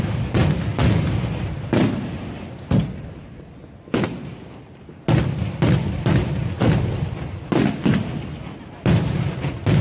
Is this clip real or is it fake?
real